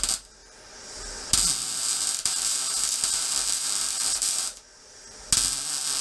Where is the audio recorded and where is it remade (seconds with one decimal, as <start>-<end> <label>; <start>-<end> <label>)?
0.0-0.4 recorded; 0.4-1.1 remade; 1.1-1.6 recorded; 1.6-5.2 remade; 5.2-6.0 recorded